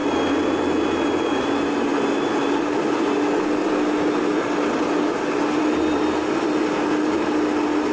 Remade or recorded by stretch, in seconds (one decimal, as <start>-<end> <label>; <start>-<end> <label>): 0.0-7.9 recorded

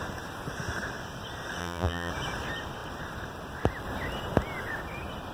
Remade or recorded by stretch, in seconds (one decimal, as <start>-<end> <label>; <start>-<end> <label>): 0.0-1.6 recorded; 1.6-2.1 remade; 2.1-5.3 recorded

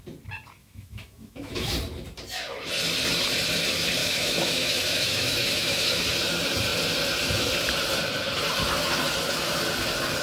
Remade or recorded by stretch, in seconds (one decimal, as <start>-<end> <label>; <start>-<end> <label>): 0.0-0.6 recorded; 0.6-1.7 remade; 1.7-4.0 recorded; 4.0-6.0 remade; 6.0-10.2 recorded

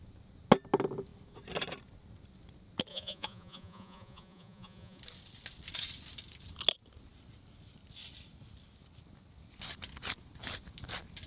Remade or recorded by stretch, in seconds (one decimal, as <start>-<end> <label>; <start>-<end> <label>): 0.0-2.9 recorded; 2.9-5.0 remade; 5.0-11.3 recorded

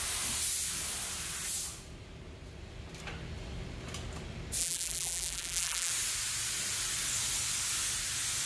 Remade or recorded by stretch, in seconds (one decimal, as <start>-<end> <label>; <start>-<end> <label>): 0.0-4.6 recorded; 4.6-5.9 remade; 5.9-8.5 recorded

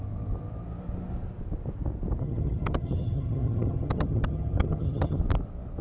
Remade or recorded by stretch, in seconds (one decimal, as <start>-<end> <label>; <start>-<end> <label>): 0.0-2.2 recorded; 2.2-5.2 remade; 5.2-5.8 recorded

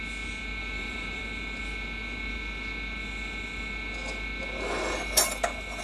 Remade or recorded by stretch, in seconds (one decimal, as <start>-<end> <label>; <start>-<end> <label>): 0.0-0.6 recorded; 0.6-1.2 remade; 1.2-5.8 recorded